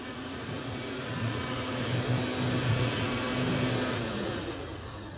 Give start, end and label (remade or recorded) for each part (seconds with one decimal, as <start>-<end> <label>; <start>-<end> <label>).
0.0-1.9 remade; 1.9-2.7 recorded; 2.7-3.3 remade; 3.3-3.9 recorded; 3.9-5.2 remade